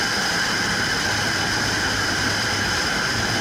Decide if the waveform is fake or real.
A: fake